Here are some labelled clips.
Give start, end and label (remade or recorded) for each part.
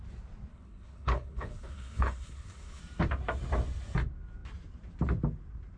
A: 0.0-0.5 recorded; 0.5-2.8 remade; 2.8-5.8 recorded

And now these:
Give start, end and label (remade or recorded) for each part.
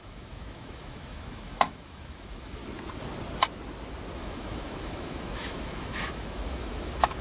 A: 0.0-2.6 remade; 2.6-4.1 recorded; 4.1-7.2 remade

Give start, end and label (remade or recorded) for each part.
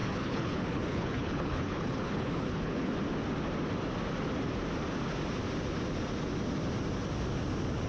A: 0.0-2.9 remade; 2.9-7.9 recorded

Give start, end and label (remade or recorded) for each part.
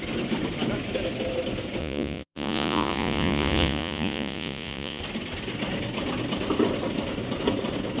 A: 0.0-1.8 recorded; 1.8-5.0 remade; 5.0-8.0 recorded